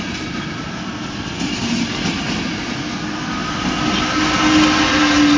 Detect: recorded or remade recorded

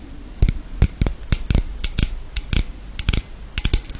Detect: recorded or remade recorded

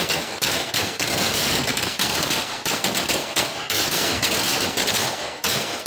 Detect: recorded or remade remade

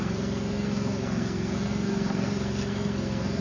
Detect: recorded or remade remade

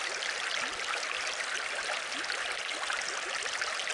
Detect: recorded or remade recorded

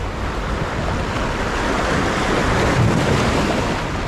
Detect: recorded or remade recorded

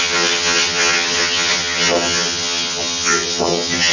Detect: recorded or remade remade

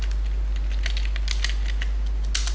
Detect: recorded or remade recorded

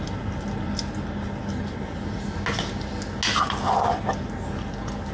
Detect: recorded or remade recorded